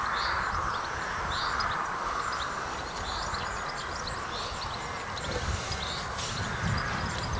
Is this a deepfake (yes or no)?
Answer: no